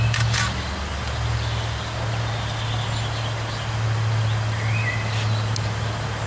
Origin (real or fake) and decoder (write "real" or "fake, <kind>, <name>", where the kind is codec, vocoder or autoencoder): real